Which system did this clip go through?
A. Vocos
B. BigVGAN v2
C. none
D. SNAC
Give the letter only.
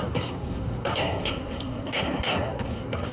D